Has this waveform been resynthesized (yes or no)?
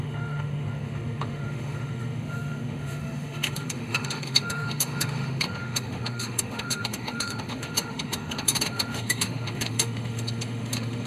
yes